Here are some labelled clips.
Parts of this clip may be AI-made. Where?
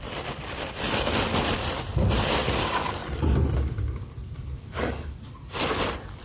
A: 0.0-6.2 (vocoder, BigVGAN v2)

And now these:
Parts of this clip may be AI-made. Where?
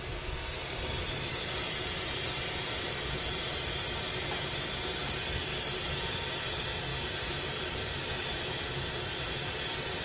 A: 0.4-5.5 (vocoder, BigVGAN v2)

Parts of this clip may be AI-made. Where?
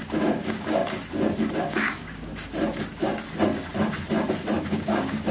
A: 0.0-0.8 (codec, DAC); 1.6-2.3; 4.6-5.3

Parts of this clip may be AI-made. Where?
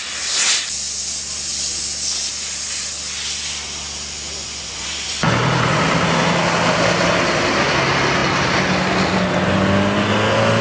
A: 4.4-5.8 (vocoder, Vocos)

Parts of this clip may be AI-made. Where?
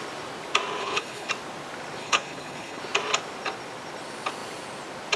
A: 0.8-1.3 (codec, HILCodec); 2.0-2.8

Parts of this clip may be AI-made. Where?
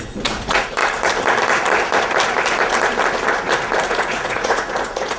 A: 0.0-0.8 (vocoder, Vocos); 3.9-5.2